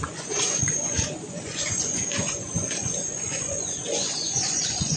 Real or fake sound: fake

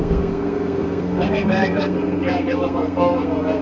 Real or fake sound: fake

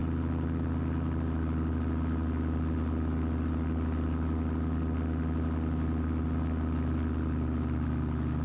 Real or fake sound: real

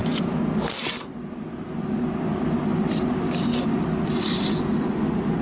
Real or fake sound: real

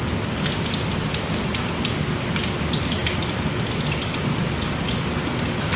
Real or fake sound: real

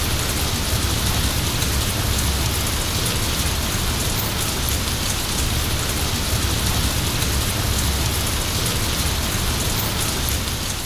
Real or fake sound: real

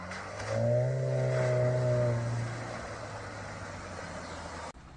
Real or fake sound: real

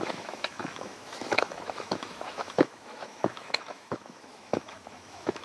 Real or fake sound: fake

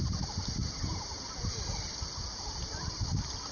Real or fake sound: real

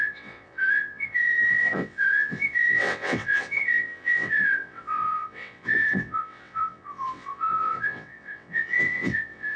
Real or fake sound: fake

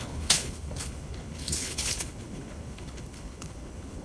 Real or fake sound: fake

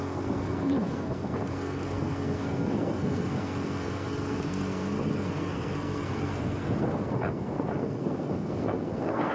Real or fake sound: fake